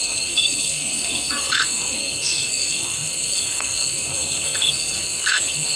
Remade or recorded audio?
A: remade